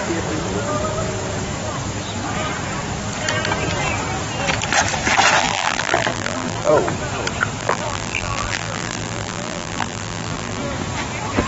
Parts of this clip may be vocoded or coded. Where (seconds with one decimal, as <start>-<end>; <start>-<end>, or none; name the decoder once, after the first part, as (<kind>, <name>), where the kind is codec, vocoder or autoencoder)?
5.4-6.7 (vocoder, BigVGAN v2); 7.6-10.6